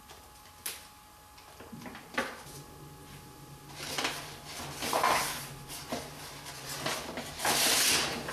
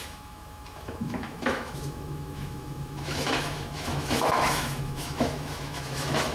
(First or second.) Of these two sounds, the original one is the first